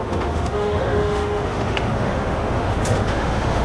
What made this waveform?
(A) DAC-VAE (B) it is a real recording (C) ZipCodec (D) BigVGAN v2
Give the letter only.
A